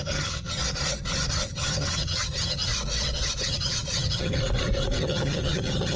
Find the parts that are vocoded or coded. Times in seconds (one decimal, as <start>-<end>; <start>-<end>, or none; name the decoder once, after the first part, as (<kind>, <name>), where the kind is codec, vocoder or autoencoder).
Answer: 0.0-0.6 (vocoder, HiFi-GAN); 1.3-2.7; 3.4-4.4; 5.0-6.0